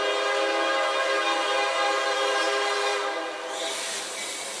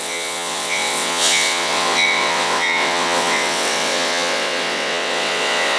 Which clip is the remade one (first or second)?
second